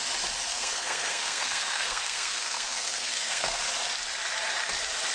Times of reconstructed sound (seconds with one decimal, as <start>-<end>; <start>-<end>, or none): 0.5-3.6